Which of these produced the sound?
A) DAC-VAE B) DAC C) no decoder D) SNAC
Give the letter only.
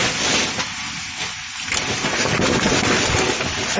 C